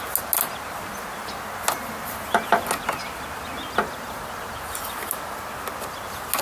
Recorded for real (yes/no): yes